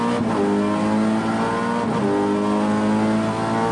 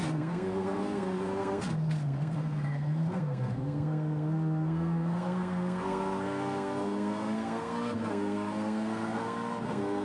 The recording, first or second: first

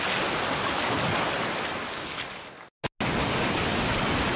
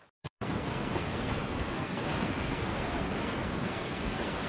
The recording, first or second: first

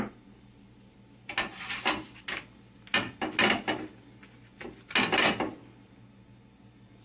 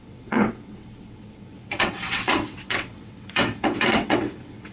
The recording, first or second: first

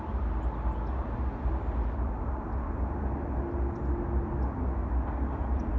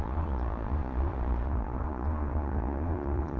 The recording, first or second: first